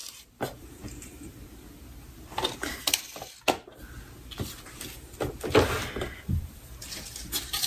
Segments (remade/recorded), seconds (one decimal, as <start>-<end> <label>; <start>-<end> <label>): 0.0-1.5 remade; 1.5-7.7 recorded

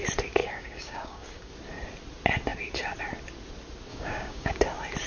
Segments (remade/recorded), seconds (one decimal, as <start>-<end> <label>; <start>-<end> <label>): 0.0-0.4 recorded; 0.4-1.5 remade; 1.5-3.9 recorded; 3.9-4.6 remade; 4.6-5.1 recorded

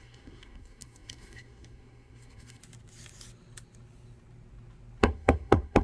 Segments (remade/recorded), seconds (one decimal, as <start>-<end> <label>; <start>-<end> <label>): 0.0-2.6 remade; 2.6-5.0 recorded; 5.0-5.8 remade

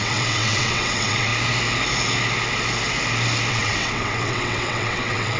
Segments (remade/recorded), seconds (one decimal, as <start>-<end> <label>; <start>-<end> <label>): 0.0-1.3 remade; 1.3-3.5 recorded; 3.5-5.4 remade

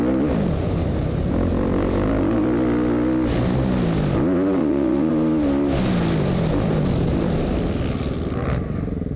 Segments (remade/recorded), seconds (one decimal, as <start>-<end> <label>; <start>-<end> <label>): 0.0-4.6 recorded; 4.6-5.1 remade; 5.1-9.2 recorded

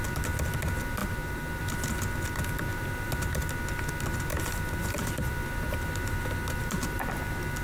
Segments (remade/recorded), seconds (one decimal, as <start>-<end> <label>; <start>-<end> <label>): 0.0-1.0 recorded; 1.0-1.6 remade; 1.6-2.7 recorded; 2.7-3.5 remade; 3.5-4.3 recorded; 4.3-7.0 remade; 7.0-7.6 recorded

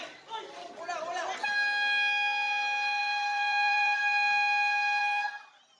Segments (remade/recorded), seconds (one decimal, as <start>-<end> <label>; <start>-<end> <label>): 0.0-3.0 recorded; 3.0-4.0 remade; 4.0-5.0 recorded; 5.0-5.8 remade

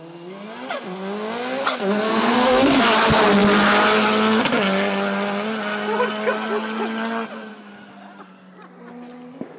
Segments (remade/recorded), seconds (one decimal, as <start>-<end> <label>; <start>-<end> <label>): 0.0-1.6 recorded; 1.6-2.8 remade; 2.8-9.6 recorded